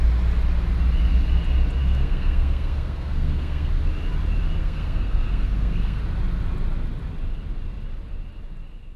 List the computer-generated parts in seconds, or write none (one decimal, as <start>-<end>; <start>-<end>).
1.8-3.7; 4.6-6.0